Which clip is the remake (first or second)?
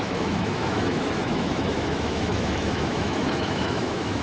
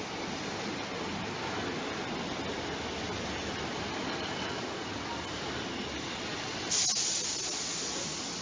first